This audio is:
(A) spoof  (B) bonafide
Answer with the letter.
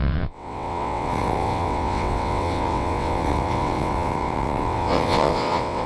A